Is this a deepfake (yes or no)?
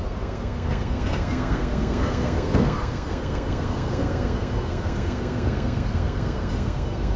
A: yes